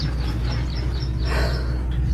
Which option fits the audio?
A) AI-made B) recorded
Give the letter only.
B